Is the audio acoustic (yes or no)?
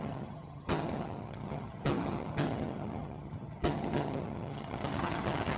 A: no